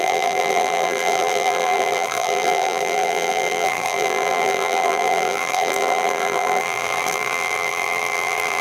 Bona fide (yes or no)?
no